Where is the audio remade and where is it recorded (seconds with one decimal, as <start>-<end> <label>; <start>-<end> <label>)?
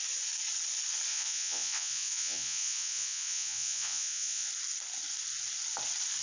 0.0-1.1 recorded; 1.1-4.5 remade; 4.5-6.2 recorded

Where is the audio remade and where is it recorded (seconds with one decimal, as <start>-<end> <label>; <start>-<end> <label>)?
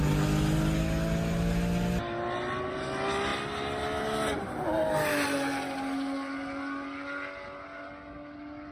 0.0-8.7 recorded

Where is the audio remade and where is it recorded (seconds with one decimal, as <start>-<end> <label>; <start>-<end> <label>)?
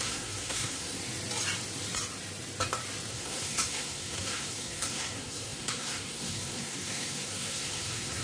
0.0-1.0 remade; 1.0-3.1 recorded; 3.1-8.2 remade